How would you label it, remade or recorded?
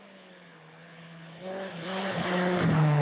remade